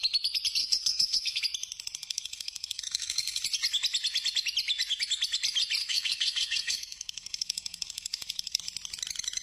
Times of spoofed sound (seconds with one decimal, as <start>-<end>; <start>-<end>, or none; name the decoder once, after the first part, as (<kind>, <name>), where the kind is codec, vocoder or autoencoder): 0.6-1.4 (codec, SNAC); 2.0-3.4; 5.8-8.6